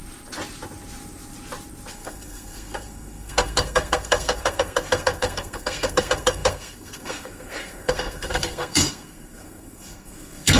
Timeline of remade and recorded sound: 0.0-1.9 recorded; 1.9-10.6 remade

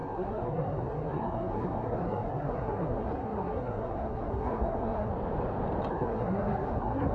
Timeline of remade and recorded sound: 0.0-5.1 remade; 5.1-5.9 recorded; 5.9-7.1 remade

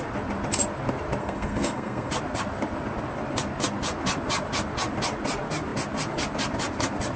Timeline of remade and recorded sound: 0.0-1.2 recorded; 1.2-2.1 remade; 2.1-7.2 recorded

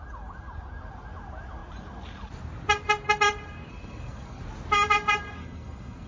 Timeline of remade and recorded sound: 0.0-3.7 recorded; 3.7-4.4 remade; 4.4-5.4 recorded; 5.4-6.1 remade

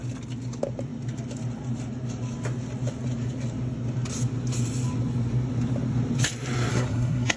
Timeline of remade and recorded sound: 0.0-6.7 recorded; 6.7-7.4 remade